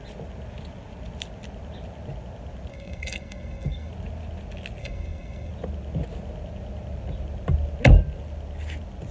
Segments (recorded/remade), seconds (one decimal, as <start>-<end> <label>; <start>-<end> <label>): 0.0-2.7 recorded; 2.7-3.9 remade; 3.9-4.8 recorded; 4.8-5.5 remade; 5.5-9.1 recorded